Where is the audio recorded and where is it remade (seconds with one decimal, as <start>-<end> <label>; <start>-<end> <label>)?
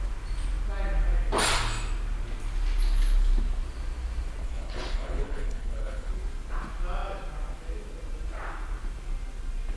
0.0-4.4 recorded; 4.4-6.1 remade; 6.1-9.8 recorded